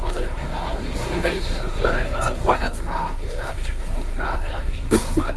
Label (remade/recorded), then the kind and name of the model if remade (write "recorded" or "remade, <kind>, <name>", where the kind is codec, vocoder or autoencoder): remade, codec, SNAC